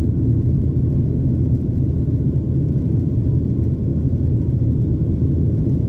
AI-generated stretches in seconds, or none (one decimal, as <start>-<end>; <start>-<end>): none